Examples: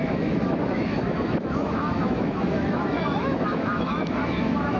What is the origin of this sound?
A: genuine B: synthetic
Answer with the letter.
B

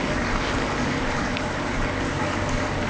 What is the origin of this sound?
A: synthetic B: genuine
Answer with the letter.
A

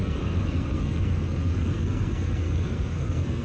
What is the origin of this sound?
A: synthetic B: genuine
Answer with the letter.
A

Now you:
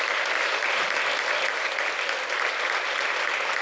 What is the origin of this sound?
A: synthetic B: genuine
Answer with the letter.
B